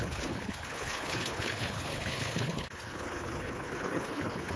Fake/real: fake